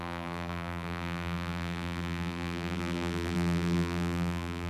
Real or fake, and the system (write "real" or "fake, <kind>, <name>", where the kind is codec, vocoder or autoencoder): fake, vocoder, BigVGAN v2